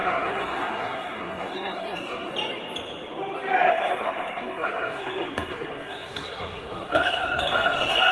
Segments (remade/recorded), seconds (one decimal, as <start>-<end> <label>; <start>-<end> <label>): 0.0-2.3 remade; 2.3-3.7 recorded; 3.7-8.1 remade